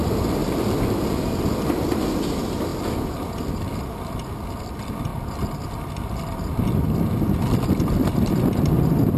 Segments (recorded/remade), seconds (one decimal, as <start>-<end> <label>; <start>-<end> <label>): 0.0-9.2 recorded